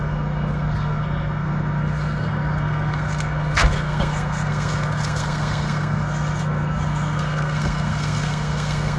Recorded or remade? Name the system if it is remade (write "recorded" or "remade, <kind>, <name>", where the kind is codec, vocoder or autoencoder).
remade, codec, SNAC